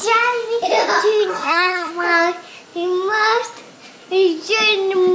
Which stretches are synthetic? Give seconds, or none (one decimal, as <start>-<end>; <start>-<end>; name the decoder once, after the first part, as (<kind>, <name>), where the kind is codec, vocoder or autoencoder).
1.3-1.9 (codec, SNAC)